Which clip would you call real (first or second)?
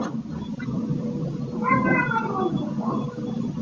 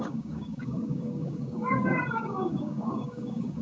first